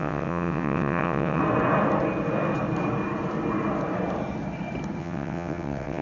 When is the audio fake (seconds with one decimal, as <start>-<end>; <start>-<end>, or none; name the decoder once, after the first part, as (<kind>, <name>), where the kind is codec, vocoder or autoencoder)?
0.0-1.4 (vocoder, WaveNeXt); 5.0-6.0